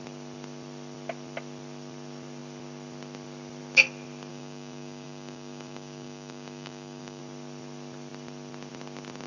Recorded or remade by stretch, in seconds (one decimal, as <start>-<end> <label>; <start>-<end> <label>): 0.0-4.3 recorded; 4.3-7.2 remade; 7.2-9.3 recorded